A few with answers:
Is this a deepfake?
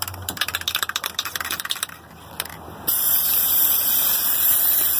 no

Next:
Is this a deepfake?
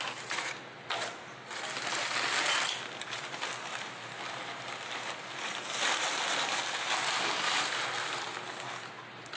no